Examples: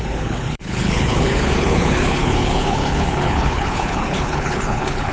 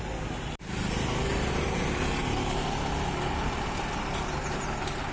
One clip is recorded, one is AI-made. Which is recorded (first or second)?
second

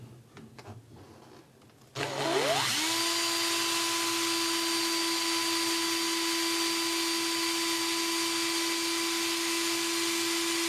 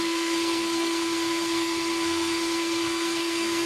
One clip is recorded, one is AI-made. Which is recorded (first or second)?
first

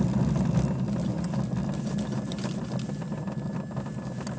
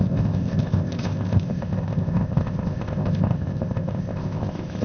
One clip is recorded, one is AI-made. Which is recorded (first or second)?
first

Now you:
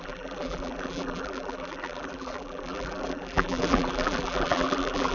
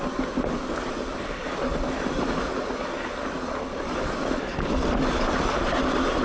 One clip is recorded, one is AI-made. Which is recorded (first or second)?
second